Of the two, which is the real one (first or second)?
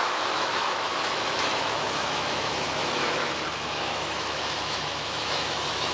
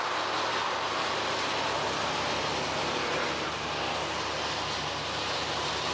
second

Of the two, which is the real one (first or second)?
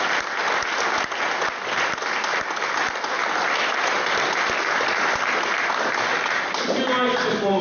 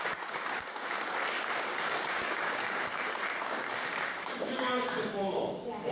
first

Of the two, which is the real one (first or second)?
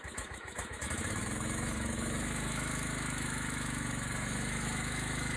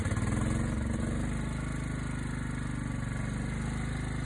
second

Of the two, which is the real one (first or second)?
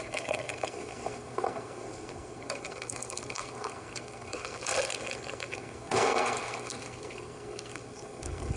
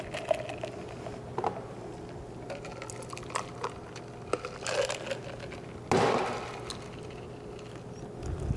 second